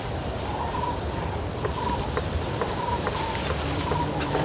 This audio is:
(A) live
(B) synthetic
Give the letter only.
A